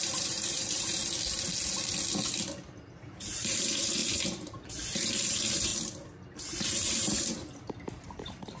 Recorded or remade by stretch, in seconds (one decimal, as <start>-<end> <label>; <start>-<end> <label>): 0.0-1.0 remade; 1.0-2.8 recorded; 2.8-5.7 remade; 5.7-6.4 recorded; 6.4-8.6 remade